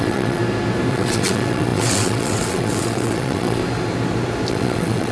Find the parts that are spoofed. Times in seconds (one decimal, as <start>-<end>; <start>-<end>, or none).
0.0-0.4; 0.9-3.6; 4.5-5.1